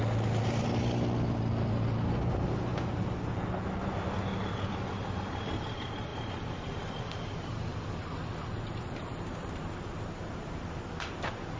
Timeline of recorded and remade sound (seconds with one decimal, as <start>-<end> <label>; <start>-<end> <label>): 0.0-11.6 recorded